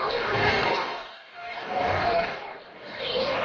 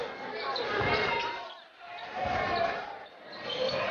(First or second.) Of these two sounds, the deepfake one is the first